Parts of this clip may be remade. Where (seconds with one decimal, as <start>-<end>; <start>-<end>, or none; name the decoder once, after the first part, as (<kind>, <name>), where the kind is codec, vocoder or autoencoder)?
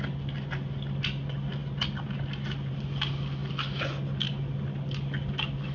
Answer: none